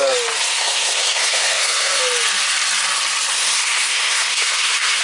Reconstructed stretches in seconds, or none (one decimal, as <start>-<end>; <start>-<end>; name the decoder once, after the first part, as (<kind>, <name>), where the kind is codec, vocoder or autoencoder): 0.5-2.0 (codec, SNAC); 3.3-5.0